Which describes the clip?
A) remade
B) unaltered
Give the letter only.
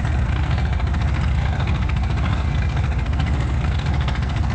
A